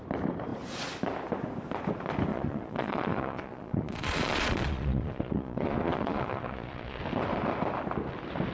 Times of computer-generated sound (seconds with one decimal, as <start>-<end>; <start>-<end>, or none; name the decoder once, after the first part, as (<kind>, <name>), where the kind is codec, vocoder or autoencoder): 2.3-7.0 (vocoder, Vocos)